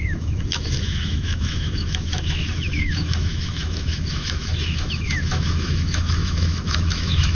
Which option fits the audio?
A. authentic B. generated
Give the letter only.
B